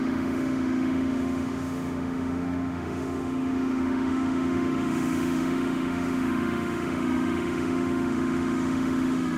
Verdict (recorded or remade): remade